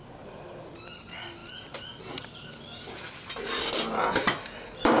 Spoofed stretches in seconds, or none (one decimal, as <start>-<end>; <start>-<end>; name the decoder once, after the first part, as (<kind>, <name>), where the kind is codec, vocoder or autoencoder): none